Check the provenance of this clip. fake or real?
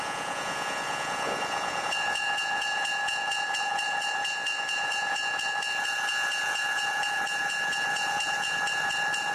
fake